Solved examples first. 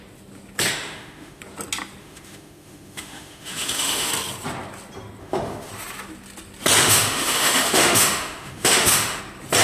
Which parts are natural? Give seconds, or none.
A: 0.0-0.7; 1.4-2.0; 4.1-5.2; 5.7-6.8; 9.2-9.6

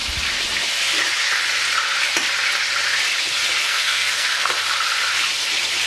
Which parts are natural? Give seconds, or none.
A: 0.0-3.6; 4.5-5.9

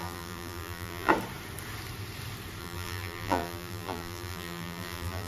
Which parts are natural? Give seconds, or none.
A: 1.1-2.6